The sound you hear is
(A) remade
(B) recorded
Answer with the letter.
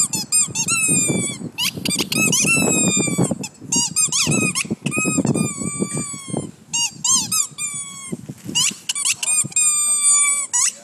B